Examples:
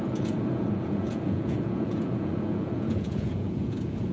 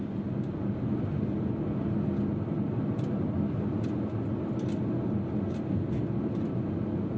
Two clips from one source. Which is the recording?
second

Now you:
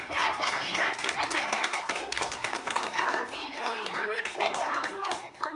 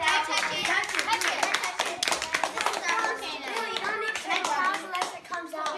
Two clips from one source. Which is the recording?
second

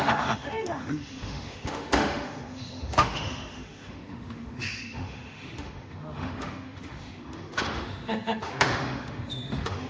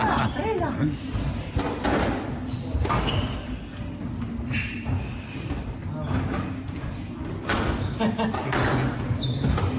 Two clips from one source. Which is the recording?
second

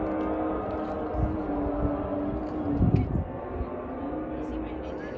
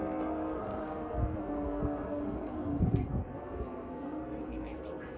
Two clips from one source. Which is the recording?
first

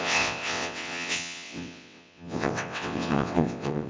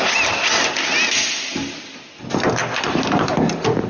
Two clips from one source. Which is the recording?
second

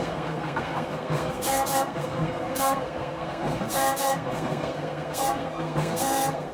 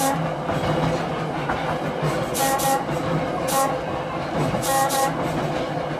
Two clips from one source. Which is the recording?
second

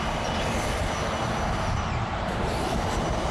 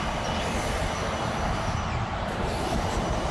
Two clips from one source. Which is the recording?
first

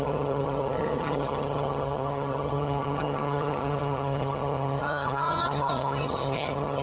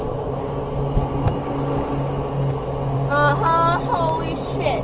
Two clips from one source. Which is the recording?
second